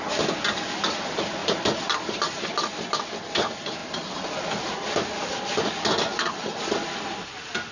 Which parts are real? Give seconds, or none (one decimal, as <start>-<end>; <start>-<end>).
0.0-7.7